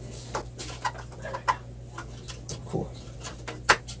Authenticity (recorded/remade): recorded